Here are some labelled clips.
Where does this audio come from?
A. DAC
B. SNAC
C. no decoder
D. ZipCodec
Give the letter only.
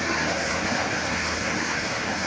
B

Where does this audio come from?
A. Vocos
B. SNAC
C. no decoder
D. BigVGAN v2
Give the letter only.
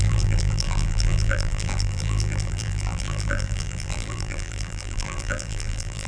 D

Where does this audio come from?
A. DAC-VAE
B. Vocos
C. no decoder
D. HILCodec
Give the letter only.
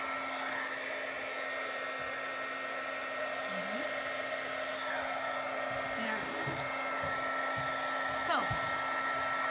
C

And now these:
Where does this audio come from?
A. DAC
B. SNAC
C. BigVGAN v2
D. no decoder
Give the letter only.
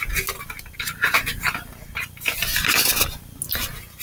D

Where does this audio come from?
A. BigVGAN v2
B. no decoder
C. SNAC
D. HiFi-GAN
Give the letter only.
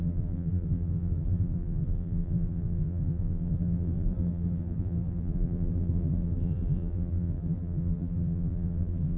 A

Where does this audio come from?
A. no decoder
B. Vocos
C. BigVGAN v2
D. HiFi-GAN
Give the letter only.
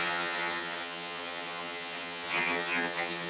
D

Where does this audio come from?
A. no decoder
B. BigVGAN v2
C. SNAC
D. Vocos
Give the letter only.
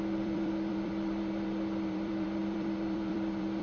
B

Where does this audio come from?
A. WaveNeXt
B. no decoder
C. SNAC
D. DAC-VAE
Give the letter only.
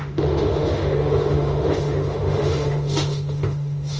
D